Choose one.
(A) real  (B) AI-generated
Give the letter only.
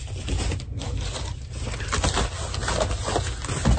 A